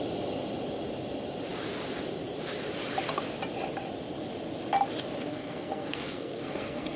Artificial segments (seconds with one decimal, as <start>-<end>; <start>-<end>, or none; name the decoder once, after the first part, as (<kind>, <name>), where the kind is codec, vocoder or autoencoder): 5.3-7.0 (codec, SNAC)